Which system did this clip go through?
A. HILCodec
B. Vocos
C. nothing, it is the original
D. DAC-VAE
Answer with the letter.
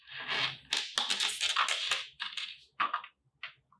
C